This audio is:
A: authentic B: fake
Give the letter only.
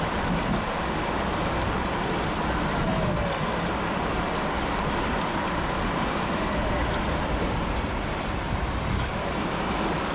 A